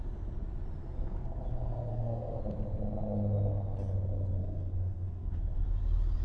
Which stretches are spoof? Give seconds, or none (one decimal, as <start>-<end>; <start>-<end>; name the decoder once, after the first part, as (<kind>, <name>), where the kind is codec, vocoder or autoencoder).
1.9-2.4 (codec, SNAC); 4.4-5.3